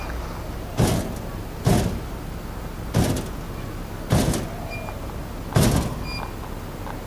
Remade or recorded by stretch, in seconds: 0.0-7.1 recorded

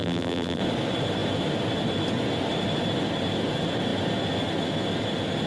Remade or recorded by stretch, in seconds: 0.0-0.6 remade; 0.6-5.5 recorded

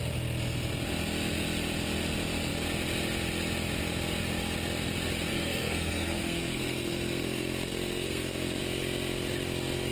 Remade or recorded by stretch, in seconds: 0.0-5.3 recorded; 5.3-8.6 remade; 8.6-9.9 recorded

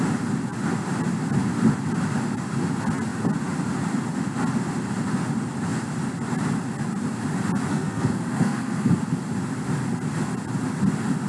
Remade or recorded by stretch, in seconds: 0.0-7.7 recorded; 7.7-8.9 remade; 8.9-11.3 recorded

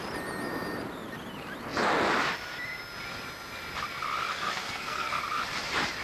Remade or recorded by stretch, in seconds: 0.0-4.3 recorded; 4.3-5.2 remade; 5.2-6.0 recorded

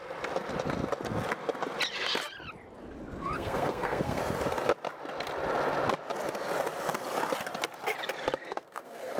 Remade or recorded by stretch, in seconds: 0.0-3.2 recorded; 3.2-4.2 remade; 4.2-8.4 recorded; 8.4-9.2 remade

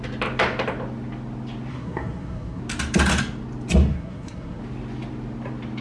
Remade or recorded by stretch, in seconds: 0.0-1.7 recorded; 1.7-2.6 remade; 2.6-3.9 recorded; 3.9-4.6 remade; 4.6-5.8 recorded

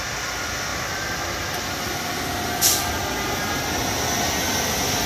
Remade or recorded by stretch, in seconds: 0.0-5.1 recorded